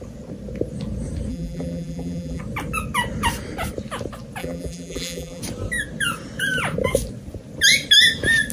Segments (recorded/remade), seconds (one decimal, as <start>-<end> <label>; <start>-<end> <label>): 0.0-1.3 recorded; 1.3-2.4 remade; 2.4-4.4 recorded; 4.4-5.4 remade; 5.4-8.5 recorded

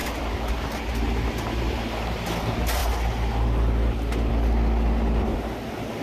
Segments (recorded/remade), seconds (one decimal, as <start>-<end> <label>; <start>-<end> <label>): 0.0-6.0 recorded

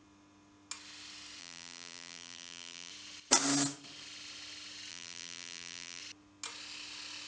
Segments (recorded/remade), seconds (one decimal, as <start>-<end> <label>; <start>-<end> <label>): 0.0-1.4 recorded; 1.4-2.9 remade; 2.9-4.9 recorded; 4.9-6.0 remade; 6.0-7.3 recorded

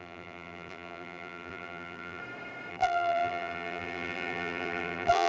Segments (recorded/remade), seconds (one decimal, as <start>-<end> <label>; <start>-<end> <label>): 0.0-2.2 remade; 2.2-2.7 recorded; 2.7-5.3 remade

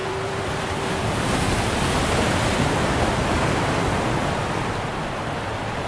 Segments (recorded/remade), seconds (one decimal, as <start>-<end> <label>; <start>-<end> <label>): 0.0-1.3 remade; 1.3-5.9 recorded

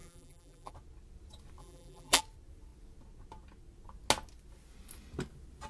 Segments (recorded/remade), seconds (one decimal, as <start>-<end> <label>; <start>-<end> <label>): 0.0-0.7 remade; 0.7-1.6 recorded; 1.6-2.2 remade; 2.2-5.7 recorded

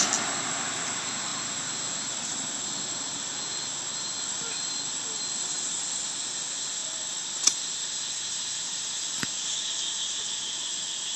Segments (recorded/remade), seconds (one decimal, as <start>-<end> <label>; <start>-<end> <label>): 0.0-11.2 recorded

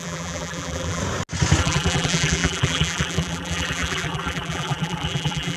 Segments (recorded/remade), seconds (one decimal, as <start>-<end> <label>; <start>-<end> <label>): 0.0-1.0 remade; 1.0-1.6 recorded; 1.6-5.6 remade